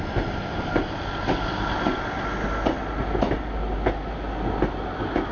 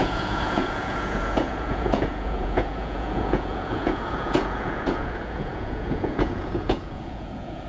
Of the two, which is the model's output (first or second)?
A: second